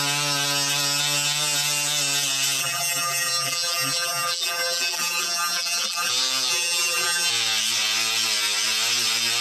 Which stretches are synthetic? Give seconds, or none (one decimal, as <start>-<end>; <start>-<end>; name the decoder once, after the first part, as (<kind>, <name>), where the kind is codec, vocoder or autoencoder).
2.6-6.1 (vocoder, BigVGAN v2); 6.5-7.3